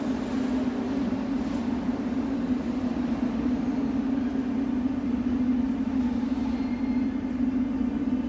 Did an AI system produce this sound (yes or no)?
no